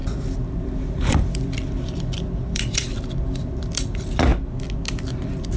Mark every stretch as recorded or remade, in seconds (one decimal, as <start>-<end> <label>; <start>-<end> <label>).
0.0-4.3 remade; 4.3-5.1 recorded; 5.1-5.6 remade